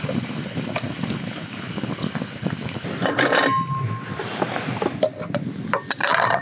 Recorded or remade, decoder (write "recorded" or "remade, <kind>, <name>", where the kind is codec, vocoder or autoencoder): recorded